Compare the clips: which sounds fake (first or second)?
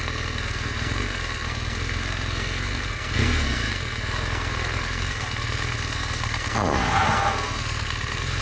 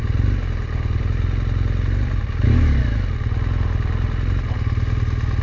first